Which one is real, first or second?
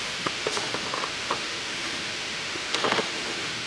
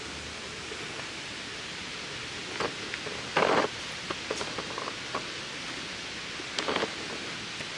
second